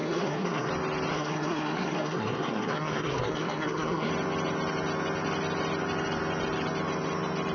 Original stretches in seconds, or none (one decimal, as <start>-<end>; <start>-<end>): 0.7-1.1; 4.1-7.5